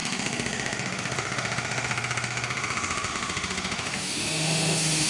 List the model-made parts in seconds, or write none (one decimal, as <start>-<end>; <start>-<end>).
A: 0.0-5.1